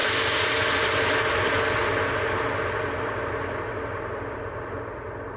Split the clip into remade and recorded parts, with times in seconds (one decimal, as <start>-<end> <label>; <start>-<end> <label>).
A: 0.0-5.4 recorded